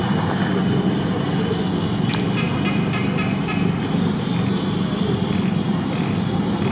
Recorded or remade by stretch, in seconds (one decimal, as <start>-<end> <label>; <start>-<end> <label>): 0.0-6.7 recorded